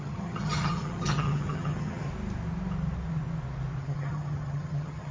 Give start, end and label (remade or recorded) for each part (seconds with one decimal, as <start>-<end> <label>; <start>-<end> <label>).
0.0-2.1 remade; 2.1-3.8 recorded; 3.8-5.1 remade